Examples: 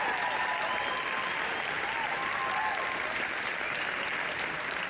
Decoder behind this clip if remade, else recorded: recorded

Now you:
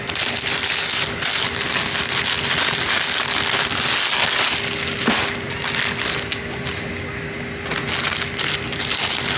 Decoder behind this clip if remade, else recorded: recorded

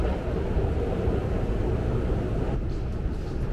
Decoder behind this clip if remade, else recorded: recorded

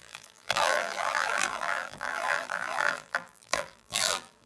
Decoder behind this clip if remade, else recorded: remade, vocoder, BigVGAN v2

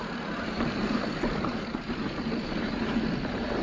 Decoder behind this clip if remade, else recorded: remade, vocoder, BigVGAN v2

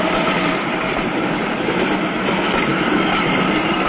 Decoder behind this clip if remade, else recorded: remade, vocoder, BigVGAN v2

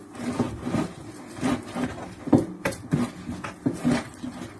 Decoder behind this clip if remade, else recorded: recorded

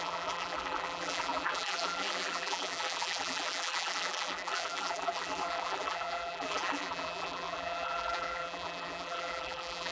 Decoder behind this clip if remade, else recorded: remade, vocoder, BigVGAN v2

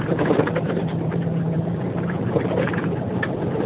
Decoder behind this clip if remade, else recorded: remade, vocoder, BigVGAN v2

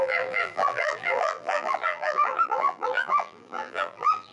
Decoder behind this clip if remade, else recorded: remade, vocoder, BigVGAN v2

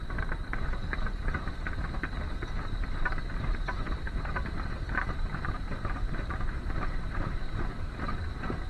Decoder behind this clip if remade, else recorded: remade, vocoder, BigVGAN v2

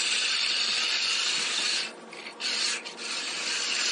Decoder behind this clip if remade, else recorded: recorded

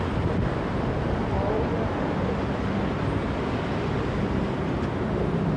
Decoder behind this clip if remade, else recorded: remade, vocoder, BigVGAN v2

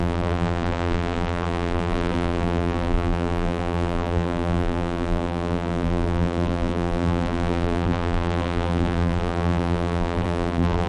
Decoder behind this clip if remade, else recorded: remade, vocoder, BigVGAN v2